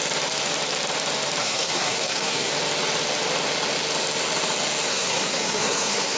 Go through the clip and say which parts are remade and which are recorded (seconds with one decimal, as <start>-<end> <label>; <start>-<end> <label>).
0.0-1.4 recorded; 1.4-2.5 remade; 2.5-4.9 recorded; 4.9-6.2 remade